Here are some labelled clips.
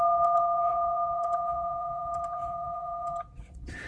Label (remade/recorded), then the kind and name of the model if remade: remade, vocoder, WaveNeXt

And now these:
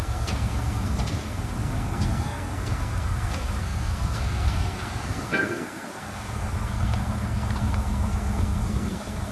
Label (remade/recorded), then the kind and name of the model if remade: remade, codec, SNAC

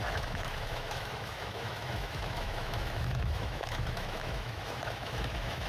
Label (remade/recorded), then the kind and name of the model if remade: remade, autoencoder, DAC-VAE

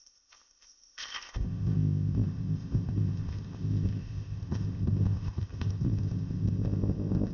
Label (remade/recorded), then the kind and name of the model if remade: remade, codec, ZipCodec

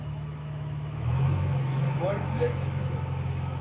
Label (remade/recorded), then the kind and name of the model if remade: remade, autoencoder, DAC-VAE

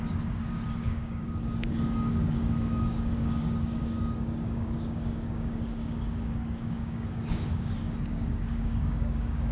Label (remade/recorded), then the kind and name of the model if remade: remade, codec, DAC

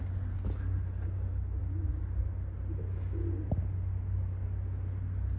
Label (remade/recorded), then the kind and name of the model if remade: recorded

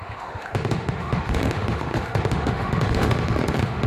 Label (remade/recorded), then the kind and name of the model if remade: remade, autoencoder, DAC-VAE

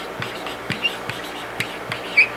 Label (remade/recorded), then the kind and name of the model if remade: recorded